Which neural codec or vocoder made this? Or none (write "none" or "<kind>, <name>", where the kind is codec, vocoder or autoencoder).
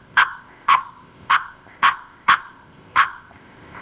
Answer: codec, ZipCodec